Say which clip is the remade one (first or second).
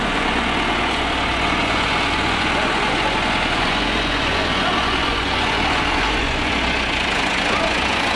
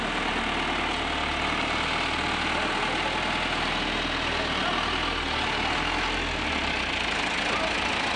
first